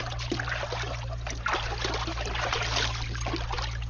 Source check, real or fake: real